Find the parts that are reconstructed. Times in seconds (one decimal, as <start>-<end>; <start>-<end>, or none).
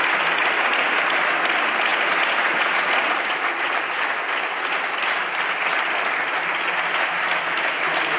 1.9-3.1